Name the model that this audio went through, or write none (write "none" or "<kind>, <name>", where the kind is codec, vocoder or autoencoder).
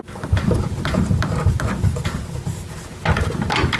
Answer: none